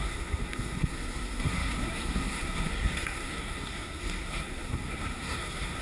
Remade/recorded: remade